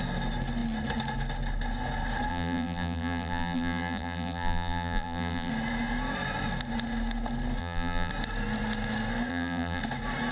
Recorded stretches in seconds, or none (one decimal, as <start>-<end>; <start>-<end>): 0.0-2.3; 5.5-7.6; 8.1-9.3; 9.8-10.3